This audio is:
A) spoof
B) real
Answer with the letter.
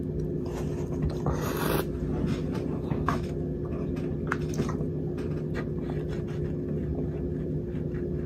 B